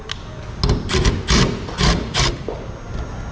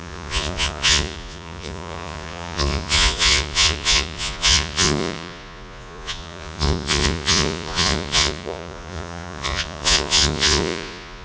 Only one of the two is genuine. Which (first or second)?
first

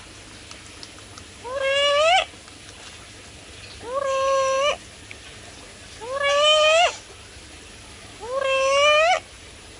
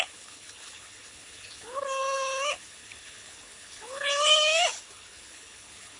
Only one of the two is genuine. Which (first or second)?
first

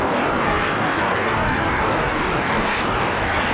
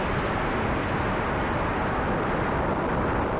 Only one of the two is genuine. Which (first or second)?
second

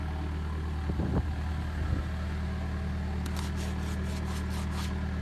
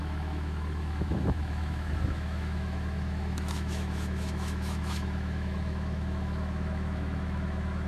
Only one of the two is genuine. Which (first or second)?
first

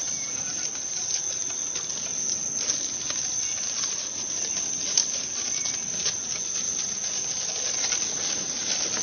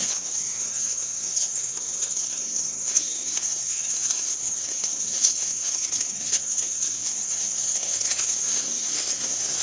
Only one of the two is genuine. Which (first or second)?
first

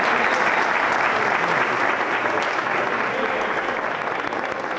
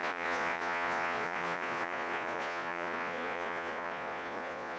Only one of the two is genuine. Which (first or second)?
first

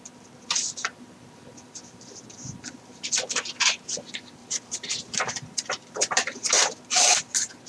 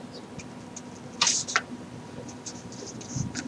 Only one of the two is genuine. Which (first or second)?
second